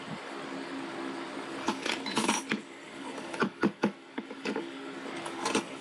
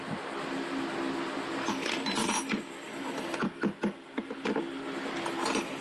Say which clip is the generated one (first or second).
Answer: first